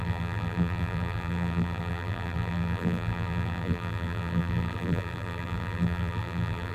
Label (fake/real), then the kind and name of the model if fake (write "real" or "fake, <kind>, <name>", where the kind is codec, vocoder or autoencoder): fake, vocoder, BigVGAN v2